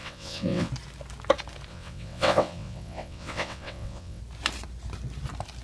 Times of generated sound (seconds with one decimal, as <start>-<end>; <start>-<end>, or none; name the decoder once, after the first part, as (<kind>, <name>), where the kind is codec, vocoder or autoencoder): 0.0-0.7 (vocoder, WaveNeXt); 1.7-4.2